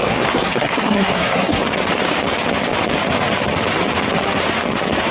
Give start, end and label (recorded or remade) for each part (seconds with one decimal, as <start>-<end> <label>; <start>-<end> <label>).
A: 0.0-1.6 remade; 1.6-5.1 recorded